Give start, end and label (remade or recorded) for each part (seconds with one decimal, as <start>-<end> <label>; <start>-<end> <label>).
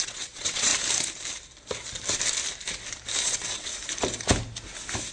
0.0-0.7 remade; 0.7-3.2 recorded; 3.2-3.7 remade; 3.7-5.1 recorded